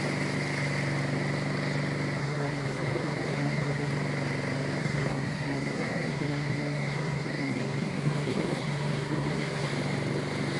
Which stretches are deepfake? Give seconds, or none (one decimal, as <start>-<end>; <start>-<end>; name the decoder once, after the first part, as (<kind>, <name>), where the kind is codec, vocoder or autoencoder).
2.2-3.9 (codec, SNAC); 4.8-9.7